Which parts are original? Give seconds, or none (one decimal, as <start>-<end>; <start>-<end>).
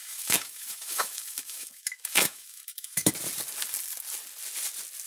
3.1-5.1